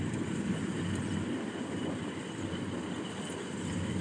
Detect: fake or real real